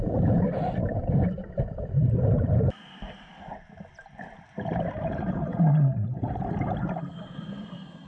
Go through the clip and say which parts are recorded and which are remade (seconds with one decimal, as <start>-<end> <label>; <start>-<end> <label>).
0.0-5.5 remade; 5.5-6.4 recorded; 6.4-8.1 remade